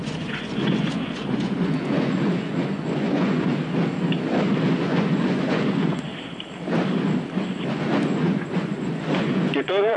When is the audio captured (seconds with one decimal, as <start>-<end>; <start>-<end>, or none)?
3.5-4.7; 6.1-7.7